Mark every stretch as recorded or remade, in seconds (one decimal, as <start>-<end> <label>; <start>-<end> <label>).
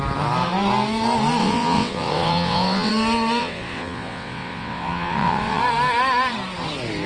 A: 0.0-1.4 recorded; 1.4-2.9 remade; 2.9-3.4 recorded; 3.4-5.6 remade; 5.6-7.1 recorded